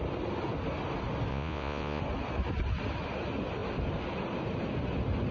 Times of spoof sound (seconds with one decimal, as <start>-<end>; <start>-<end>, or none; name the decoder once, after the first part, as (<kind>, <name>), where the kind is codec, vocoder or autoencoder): 1.3-2.0 (vocoder, Vocos)